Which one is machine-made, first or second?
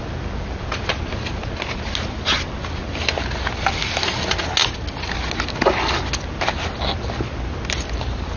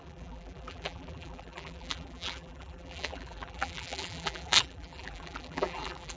second